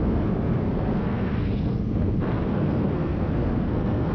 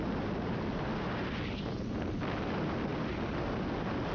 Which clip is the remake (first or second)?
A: first